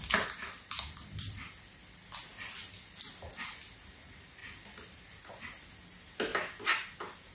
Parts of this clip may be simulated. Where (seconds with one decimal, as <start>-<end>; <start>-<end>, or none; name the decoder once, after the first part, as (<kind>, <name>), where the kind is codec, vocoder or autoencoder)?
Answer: none